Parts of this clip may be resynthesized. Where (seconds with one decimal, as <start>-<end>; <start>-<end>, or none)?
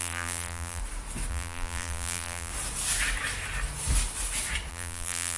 0.0-0.8; 1.3-2.5; 4.7-5.4